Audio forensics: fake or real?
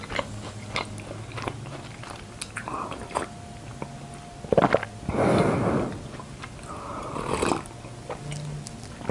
real